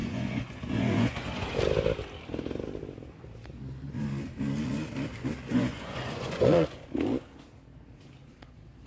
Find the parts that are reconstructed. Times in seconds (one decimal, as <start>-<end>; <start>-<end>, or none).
0.0-1.6; 5.5-6.9